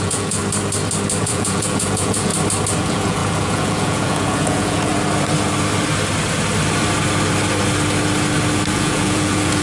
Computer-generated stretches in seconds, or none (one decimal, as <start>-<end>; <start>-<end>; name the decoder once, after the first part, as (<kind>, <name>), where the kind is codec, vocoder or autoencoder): 0.0-0.4 (vocoder, Vocos); 1.2-2.3; 2.8-4.9; 8.7-9.6